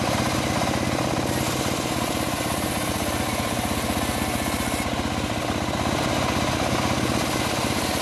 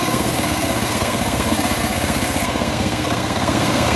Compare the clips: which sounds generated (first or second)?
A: second